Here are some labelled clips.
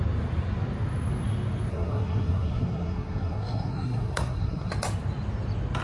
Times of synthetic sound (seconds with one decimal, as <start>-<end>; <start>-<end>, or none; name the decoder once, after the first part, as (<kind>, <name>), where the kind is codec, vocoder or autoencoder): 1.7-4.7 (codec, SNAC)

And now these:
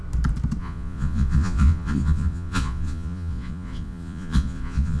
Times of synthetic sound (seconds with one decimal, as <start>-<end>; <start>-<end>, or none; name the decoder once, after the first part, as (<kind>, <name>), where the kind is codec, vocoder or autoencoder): 0.6-5.0 (vocoder, Vocos)

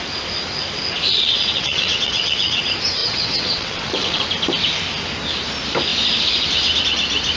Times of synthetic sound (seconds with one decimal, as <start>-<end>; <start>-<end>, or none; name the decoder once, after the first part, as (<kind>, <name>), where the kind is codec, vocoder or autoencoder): 1.1-2.6 (vocoder, WaveNeXt); 3.0-4.2

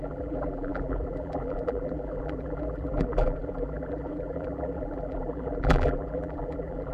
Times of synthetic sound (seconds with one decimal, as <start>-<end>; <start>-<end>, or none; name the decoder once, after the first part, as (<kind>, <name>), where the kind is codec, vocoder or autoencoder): 0.0-6.9 (vocoder, BigVGAN v2)

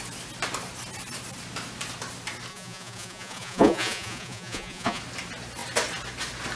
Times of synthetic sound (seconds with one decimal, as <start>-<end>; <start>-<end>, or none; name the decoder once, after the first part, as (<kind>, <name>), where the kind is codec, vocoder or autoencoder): 2.5-5.0 (vocoder, Vocos)

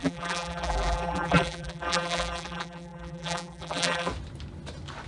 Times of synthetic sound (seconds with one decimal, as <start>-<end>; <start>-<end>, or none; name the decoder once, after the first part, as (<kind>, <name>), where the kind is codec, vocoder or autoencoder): 0.0-4.1 (vocoder, BigVGAN v2)

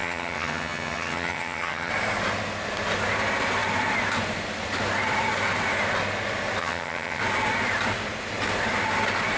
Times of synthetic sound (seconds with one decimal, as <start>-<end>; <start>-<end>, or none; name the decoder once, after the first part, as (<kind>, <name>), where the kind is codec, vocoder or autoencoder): 0.0-1.9 (vocoder, HiFi-GAN); 6.6-7.2

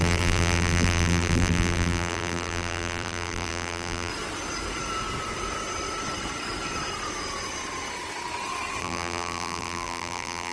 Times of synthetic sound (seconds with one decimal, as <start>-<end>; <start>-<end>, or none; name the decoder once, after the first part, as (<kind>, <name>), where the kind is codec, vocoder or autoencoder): 0.0-4.1 (vocoder, BigVGAN v2); 8.8-10.5